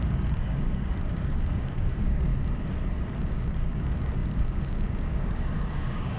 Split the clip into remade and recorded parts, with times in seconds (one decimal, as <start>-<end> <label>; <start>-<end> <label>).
0.0-2.3 remade; 2.3-3.1 recorded; 3.1-6.2 remade